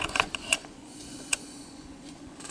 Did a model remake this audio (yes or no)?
yes